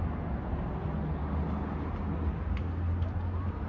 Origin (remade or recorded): recorded